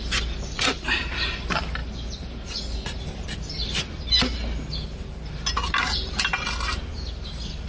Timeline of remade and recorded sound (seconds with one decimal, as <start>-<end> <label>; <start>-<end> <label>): 0.0-7.7 recorded